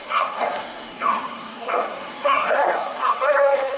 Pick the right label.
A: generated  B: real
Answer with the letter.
A